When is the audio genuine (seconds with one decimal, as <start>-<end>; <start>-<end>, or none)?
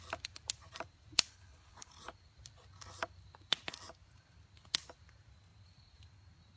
0.0-1.3; 1.9-6.6